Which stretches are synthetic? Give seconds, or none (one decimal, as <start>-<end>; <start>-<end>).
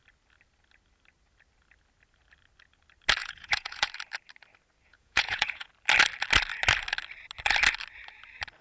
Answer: 3.2-3.9; 4.9-5.7